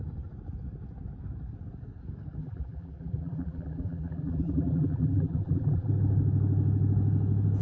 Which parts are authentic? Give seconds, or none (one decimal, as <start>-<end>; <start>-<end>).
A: 0.0-2.4; 5.9-7.6